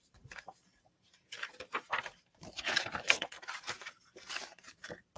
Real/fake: fake